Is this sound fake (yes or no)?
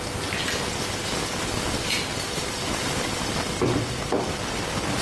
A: no